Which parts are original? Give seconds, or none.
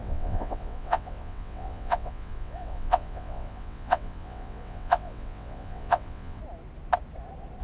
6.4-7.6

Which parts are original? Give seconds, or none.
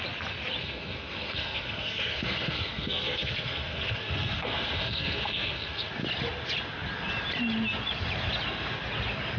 0.0-0.6; 5.9-9.4